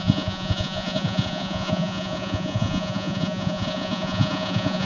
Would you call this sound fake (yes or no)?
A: yes